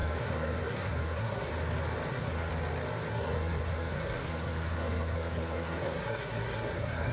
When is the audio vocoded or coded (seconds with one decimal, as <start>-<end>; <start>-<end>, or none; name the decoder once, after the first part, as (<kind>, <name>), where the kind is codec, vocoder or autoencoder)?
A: 0.0-1.5 (codec, SNAC); 2.1-2.5; 3.1-7.1